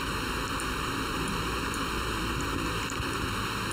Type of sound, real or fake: fake